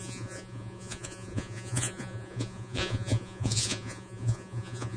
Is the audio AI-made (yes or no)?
yes